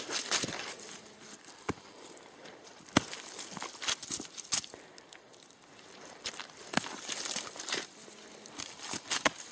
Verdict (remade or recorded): recorded